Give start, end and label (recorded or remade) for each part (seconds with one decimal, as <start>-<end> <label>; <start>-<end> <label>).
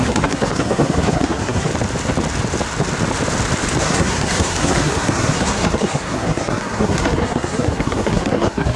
0.0-1.7 remade; 1.7-3.8 recorded; 3.8-8.8 remade